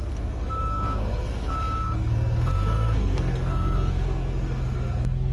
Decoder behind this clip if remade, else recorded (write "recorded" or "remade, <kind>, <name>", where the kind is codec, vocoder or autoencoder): remade, codec, SNAC